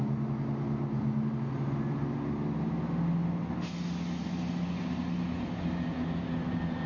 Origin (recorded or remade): recorded